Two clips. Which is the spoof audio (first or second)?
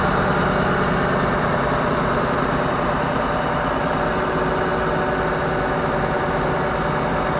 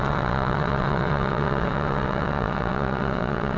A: second